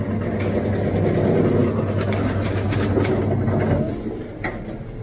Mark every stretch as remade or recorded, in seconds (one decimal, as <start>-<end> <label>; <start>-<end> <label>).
0.0-5.0 recorded